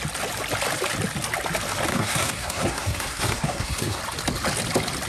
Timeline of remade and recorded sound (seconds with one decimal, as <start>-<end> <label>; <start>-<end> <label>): 0.0-1.9 recorded; 1.9-4.0 remade; 4.0-5.1 recorded